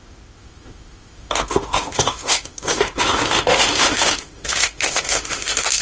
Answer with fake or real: fake